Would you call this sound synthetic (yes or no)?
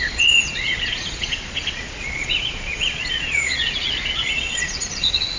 yes